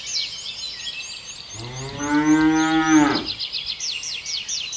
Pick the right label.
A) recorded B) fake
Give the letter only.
A